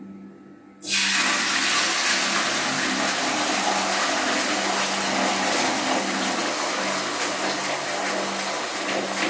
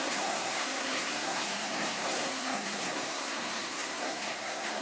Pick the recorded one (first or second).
first